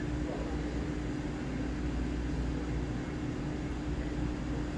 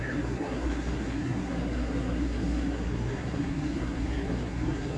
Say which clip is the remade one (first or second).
second